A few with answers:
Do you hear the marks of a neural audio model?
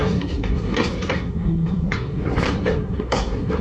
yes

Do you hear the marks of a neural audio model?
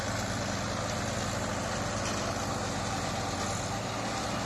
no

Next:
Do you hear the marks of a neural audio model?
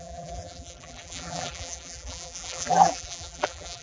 yes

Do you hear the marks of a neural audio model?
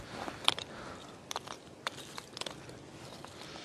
no